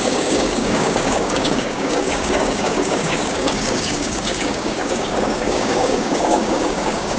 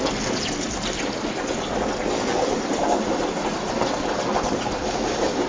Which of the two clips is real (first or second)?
second